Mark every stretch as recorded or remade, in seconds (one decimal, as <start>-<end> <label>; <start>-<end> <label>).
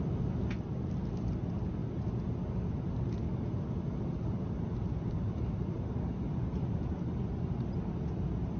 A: 0.0-4.8 recorded; 4.8-6.0 remade; 6.0-8.6 recorded